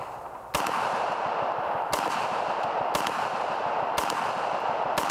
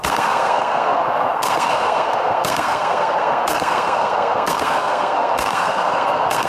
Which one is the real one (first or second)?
first